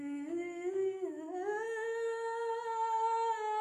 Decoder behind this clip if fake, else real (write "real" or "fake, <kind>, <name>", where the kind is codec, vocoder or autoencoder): real